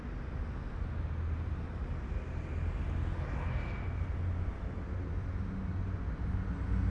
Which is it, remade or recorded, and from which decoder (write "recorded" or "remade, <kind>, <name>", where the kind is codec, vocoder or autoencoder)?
recorded